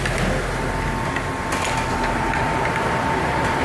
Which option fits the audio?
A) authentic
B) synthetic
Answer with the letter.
A